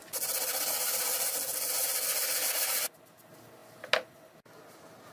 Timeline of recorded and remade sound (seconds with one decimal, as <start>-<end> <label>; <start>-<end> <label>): 0.0-5.1 recorded